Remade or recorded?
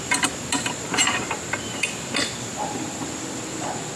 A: remade